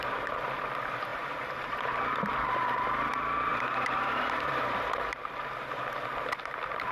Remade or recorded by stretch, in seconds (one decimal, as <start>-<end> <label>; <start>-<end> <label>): 0.0-1.1 recorded; 1.1-1.9 remade; 1.9-6.9 recorded